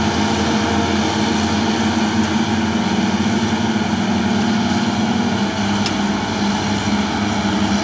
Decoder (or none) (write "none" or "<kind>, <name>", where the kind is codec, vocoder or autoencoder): none